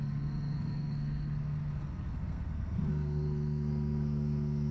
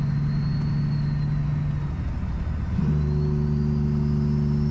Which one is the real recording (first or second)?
second